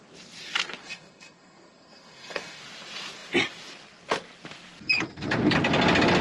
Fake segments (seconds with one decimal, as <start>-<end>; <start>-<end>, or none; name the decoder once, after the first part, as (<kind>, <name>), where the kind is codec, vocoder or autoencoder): 0.8-2.6 (codec, SNAC)

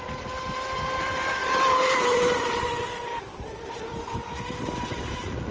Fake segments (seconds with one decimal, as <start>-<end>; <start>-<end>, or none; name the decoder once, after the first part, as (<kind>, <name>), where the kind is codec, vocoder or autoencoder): 1.4-4.7 (vocoder, BigVGAN v2)

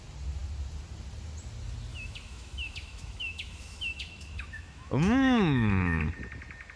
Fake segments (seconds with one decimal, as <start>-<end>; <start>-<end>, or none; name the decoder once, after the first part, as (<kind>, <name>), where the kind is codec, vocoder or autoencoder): 1.9-6.0 (autoencoder, DAC-VAE)